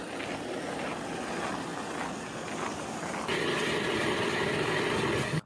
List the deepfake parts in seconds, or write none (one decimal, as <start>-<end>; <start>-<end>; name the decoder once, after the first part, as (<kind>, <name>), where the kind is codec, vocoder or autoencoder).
none